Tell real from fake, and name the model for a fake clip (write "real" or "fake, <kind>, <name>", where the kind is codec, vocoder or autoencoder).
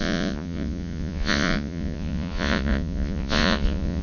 fake, vocoder, Vocos